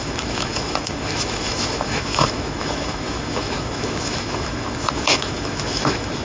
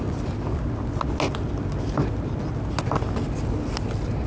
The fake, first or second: first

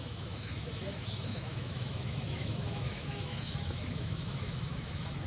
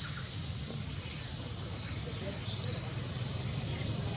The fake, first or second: first